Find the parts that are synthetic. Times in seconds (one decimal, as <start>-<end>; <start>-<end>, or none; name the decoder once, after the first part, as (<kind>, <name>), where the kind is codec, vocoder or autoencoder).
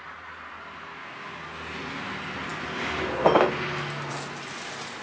1.0-1.5 (codec, DAC)